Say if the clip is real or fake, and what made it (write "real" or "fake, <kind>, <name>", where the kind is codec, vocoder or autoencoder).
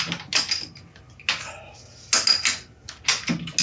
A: real